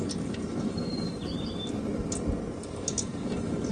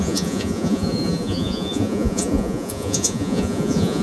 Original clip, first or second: first